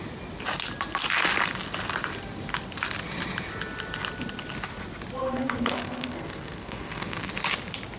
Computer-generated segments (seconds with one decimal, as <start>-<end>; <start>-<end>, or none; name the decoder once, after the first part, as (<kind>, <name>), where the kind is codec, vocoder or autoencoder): 5.2-7.3 (codec, SNAC)